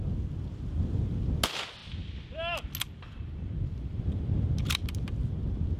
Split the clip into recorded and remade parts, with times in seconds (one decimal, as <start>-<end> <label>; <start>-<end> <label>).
0.0-5.8 recorded